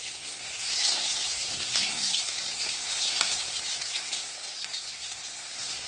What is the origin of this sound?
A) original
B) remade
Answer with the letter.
B